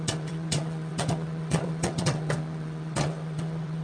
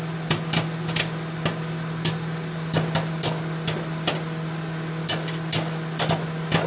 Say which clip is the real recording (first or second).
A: second